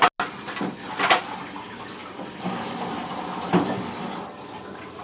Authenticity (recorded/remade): recorded